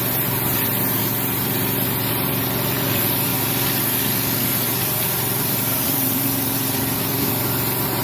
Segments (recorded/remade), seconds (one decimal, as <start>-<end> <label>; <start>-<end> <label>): 0.0-1.0 remade; 1.0-2.1 recorded; 2.1-3.3 remade; 3.3-4.8 recorded; 4.8-8.0 remade